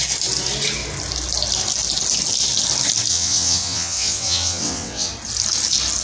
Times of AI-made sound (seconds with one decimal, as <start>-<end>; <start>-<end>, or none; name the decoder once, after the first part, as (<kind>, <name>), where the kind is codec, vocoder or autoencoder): 3.1-5.1 (vocoder, WaveNeXt)